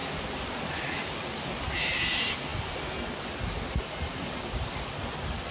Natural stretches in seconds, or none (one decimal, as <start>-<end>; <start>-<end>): 0.0-5.5